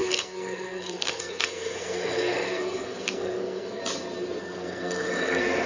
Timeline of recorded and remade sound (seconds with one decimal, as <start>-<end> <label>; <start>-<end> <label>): 0.0-3.8 remade; 3.8-4.4 recorded; 4.4-5.7 remade